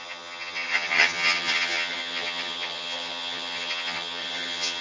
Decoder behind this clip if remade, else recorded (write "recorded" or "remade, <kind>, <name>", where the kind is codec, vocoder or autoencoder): remade, vocoder, HiFi-GAN